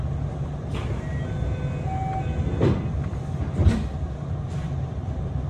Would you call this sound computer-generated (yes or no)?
no